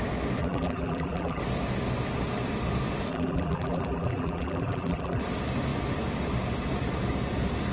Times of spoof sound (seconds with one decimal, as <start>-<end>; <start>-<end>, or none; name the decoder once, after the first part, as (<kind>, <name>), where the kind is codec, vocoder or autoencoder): 0.4-1.4 (vocoder, BigVGAN v2); 3.1-5.2